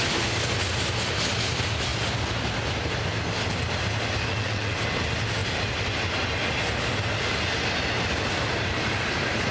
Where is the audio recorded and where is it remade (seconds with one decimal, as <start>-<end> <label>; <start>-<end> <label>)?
0.0-4.3 recorded; 4.3-4.8 remade; 4.8-9.5 recorded

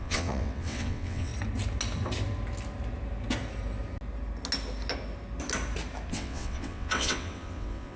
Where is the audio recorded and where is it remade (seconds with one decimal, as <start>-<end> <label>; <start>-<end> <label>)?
0.0-1.3 remade; 1.3-6.1 recorded; 6.1-8.0 remade

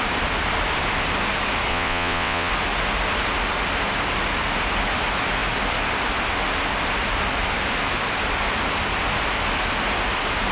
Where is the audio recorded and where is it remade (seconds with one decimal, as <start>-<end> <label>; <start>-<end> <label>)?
0.0-1.7 recorded; 1.7-2.5 remade; 2.5-10.5 recorded

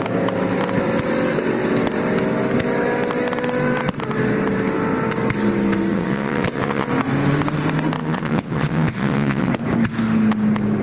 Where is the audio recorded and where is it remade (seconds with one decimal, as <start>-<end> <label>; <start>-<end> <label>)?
0.0-5.9 recorded; 5.9-6.9 remade; 6.9-8.0 recorded; 8.0-9.5 remade; 9.5-10.8 recorded

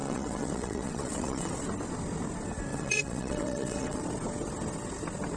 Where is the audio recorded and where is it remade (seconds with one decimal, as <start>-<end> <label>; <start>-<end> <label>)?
0.0-1.5 remade; 1.5-2.7 recorded; 2.7-4.0 remade; 4.0-5.4 recorded

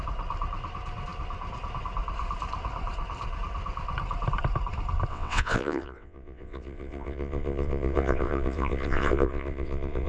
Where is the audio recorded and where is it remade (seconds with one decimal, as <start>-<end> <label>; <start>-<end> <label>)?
0.0-5.1 recorded; 5.1-10.1 remade

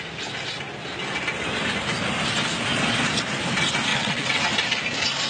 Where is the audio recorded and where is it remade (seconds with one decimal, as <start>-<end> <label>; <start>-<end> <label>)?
0.0-3.9 recorded; 3.9-4.4 remade; 4.4-5.3 recorded